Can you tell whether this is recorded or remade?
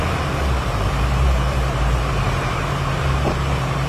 remade